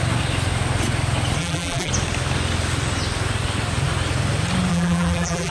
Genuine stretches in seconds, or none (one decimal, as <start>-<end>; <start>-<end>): 0.0-1.4; 1.9-4.7